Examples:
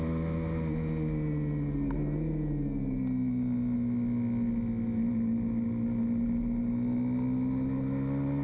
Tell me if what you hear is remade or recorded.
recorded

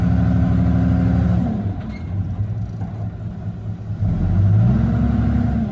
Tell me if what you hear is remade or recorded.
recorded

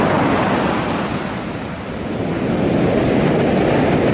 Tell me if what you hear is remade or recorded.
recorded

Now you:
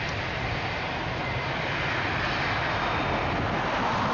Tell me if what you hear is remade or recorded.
recorded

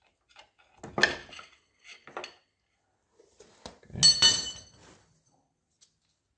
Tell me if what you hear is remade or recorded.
recorded